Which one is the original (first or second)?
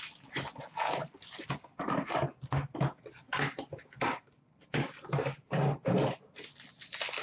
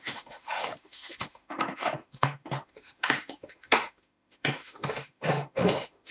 first